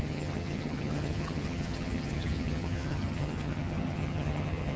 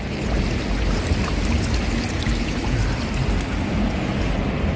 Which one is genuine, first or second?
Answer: second